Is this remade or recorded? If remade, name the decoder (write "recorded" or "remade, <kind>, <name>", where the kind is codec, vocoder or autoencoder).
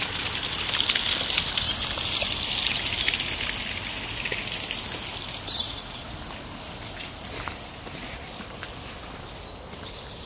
recorded